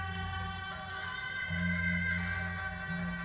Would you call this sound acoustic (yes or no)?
yes